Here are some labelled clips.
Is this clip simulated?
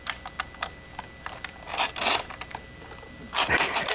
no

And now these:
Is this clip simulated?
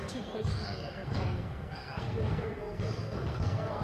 yes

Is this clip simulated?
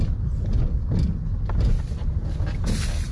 no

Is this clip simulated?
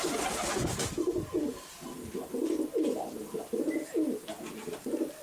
no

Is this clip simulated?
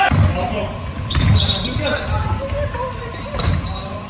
no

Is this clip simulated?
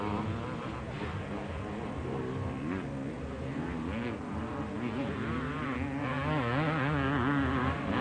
no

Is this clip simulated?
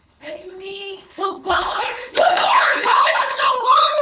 yes